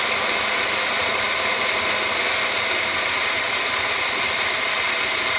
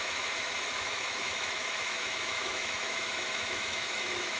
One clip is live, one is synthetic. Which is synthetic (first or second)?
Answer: second